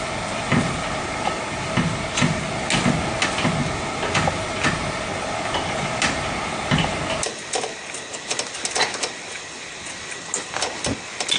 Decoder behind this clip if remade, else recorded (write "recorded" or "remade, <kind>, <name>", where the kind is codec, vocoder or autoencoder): recorded